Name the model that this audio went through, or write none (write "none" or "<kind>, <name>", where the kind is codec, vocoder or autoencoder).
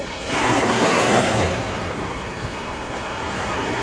codec, SNAC